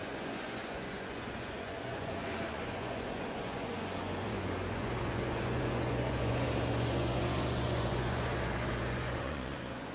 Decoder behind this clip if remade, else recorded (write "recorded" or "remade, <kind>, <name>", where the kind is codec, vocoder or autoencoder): remade, vocoder, Vocos